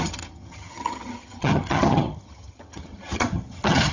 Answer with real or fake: fake